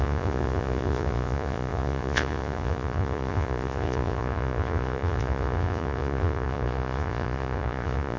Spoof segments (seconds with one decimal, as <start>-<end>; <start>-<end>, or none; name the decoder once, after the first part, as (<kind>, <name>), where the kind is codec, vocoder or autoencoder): 0.0-8.2 (vocoder, Vocos)